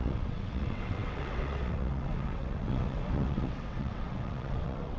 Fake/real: fake